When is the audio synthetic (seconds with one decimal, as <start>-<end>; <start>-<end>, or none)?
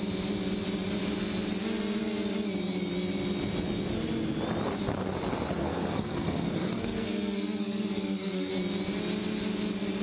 5.3-8.5